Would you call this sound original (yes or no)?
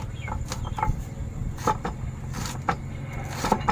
yes